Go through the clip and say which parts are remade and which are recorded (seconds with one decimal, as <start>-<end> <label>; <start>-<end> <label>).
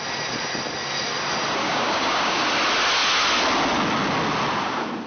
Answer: 0.0-1.6 recorded; 1.6-2.4 remade; 2.4-5.1 recorded